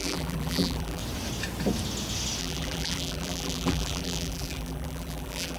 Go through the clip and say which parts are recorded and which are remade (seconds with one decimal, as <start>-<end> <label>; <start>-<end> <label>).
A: 0.0-1.0 remade; 1.0-2.4 recorded; 2.4-5.6 remade